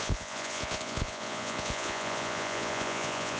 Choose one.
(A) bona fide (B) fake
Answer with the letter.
B